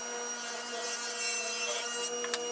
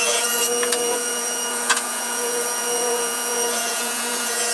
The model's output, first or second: second